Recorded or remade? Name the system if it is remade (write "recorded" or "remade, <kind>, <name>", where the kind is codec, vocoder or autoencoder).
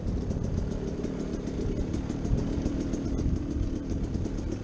recorded